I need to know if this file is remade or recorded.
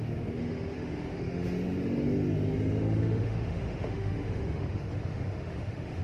remade